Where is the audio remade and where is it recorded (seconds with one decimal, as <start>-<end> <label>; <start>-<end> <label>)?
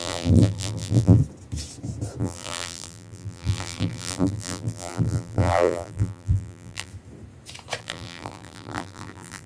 0.0-1.2 remade; 1.2-2.2 recorded; 2.2-6.9 remade; 6.9-7.8 recorded; 7.8-9.5 remade